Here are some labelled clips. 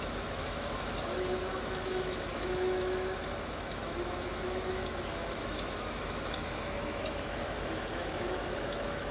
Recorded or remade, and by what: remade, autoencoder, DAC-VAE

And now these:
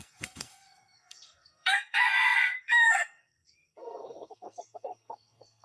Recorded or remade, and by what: remade, codec, SNAC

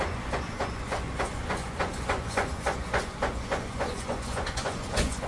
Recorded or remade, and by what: remade, vocoder, Vocos